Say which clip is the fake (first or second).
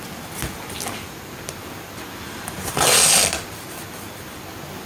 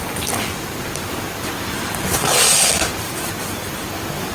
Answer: second